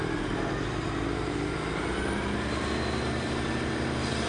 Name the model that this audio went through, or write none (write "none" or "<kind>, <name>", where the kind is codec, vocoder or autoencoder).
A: vocoder, BigVGAN v2